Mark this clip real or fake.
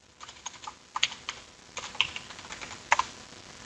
real